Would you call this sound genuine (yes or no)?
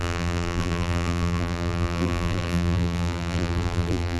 no